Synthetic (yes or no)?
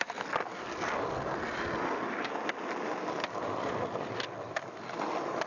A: no